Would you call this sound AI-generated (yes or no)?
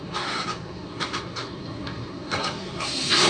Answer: yes